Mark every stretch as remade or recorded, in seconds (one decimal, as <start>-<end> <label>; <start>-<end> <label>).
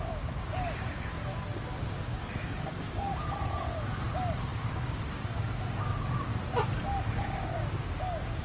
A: 0.0-1.3 remade; 1.3-1.8 recorded; 1.8-3.1 remade; 3.1-4.1 recorded; 4.1-6.3 remade; 6.3-7.2 recorded; 7.2-8.4 remade